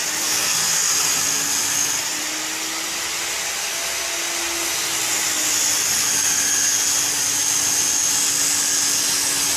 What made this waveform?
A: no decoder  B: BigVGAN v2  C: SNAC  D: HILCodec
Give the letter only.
A